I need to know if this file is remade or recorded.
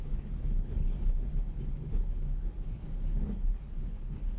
remade